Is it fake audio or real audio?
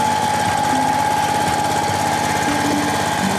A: real